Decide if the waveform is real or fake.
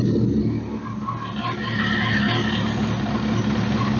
real